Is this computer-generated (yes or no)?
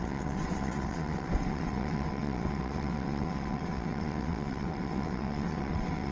yes